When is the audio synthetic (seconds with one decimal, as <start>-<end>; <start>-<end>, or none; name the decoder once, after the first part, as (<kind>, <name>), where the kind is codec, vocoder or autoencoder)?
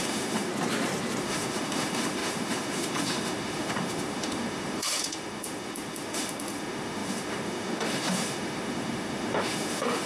0.0-0.5 (autoencoder, DAC-VAE); 1.2-10.1